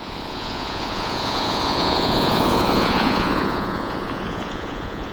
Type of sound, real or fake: fake